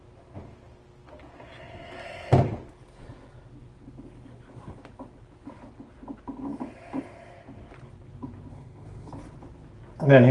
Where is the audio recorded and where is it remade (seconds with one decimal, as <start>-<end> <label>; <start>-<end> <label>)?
0.0-8.5 recorded; 8.5-9.1 remade; 9.1-10.3 recorded